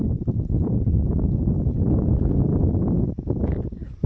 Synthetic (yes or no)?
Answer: no